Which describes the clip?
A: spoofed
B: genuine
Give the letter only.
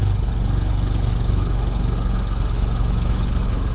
A